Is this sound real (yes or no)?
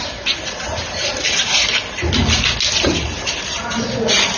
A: yes